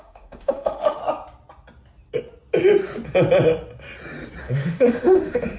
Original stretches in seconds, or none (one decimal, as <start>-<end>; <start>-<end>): 1.0-4.4